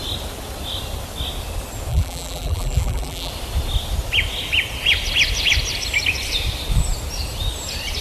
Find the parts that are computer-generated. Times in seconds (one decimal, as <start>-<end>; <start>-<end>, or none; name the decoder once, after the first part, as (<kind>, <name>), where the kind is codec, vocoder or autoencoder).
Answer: 1.9-3.3 (vocoder, BigVGAN v2)